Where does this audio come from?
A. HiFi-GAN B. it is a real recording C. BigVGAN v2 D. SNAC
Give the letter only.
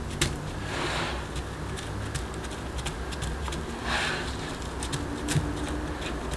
B